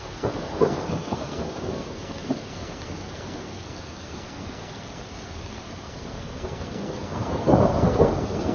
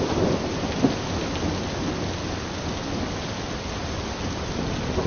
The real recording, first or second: second